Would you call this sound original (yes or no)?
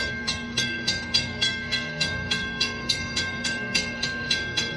no